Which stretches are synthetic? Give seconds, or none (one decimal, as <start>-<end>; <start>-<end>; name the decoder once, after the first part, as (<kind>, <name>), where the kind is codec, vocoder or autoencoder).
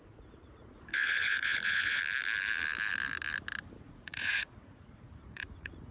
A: 0.0-2.0 (vocoder, Vocos); 3.8-5.9